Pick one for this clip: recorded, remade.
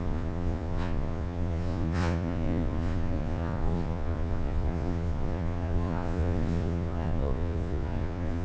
remade